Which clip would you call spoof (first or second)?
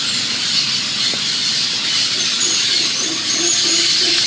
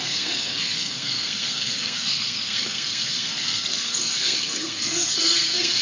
second